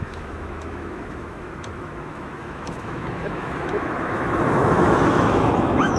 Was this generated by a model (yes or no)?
yes